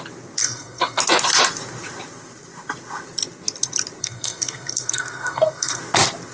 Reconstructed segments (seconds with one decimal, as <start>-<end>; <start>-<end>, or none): 0.4-1.0; 4.0-5.8